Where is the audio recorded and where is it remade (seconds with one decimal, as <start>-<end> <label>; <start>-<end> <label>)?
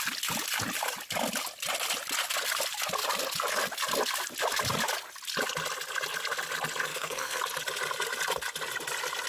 0.0-6.9 recorded; 6.9-7.4 remade; 7.4-9.3 recorded